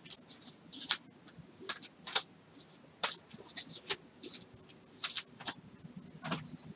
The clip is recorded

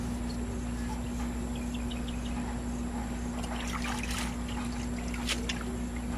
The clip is recorded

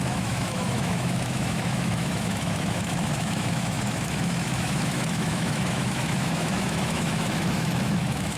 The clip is remade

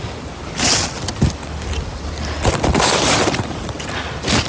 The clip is recorded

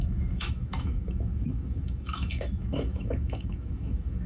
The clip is remade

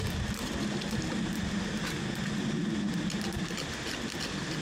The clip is recorded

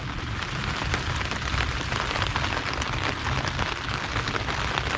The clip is recorded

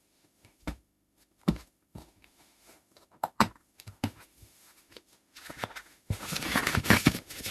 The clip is remade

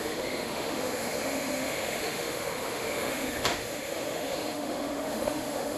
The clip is remade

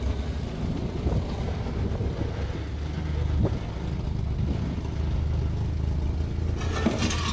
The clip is recorded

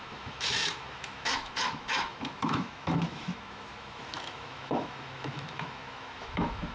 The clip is remade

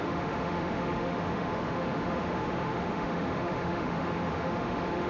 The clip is remade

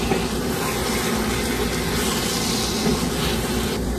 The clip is recorded